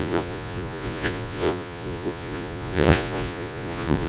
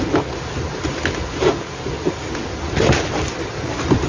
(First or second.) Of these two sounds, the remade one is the first